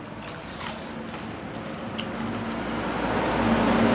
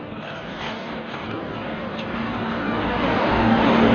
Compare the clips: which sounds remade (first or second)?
second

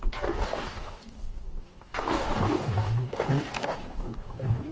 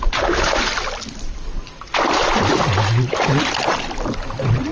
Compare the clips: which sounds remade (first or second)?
first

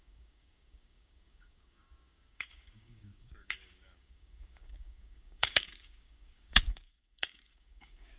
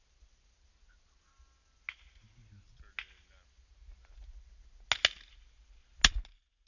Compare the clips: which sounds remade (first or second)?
first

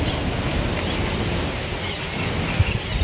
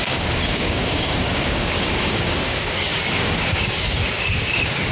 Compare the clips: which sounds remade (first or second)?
second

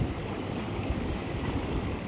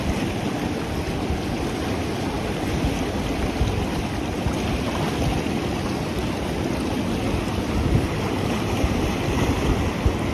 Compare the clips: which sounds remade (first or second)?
first